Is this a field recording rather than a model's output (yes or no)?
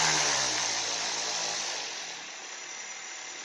yes